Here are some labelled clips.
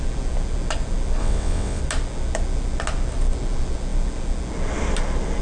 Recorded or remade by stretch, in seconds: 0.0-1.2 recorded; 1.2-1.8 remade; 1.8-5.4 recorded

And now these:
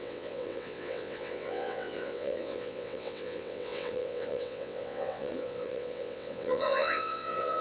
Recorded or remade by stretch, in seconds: 0.0-7.6 remade